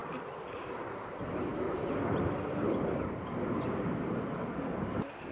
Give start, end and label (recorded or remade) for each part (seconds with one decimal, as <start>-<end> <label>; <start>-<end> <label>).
0.0-5.3 remade